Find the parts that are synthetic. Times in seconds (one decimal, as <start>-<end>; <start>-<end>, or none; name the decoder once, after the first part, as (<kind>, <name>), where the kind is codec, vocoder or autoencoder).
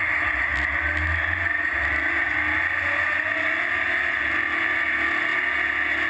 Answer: none